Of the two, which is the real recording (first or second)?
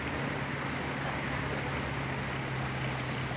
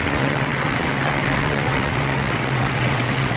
first